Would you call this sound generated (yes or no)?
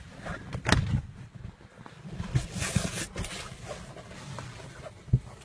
no